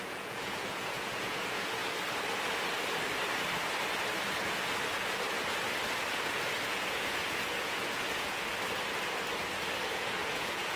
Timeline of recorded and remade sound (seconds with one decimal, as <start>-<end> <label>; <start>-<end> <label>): 0.0-1.8 remade; 1.8-6.1 recorded; 6.1-8.5 remade; 8.5-9.9 recorded; 9.9-10.8 remade